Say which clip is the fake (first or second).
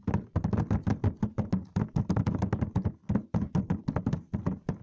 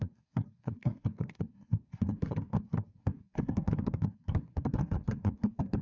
second